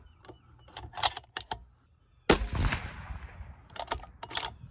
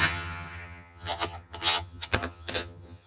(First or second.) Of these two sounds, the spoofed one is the second